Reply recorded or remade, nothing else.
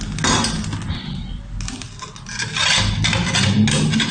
recorded